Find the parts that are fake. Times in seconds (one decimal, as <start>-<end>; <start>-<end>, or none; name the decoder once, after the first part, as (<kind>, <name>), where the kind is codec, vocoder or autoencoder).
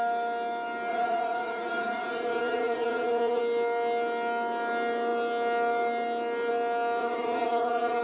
0.9-3.4 (vocoder, Vocos); 7.0-8.0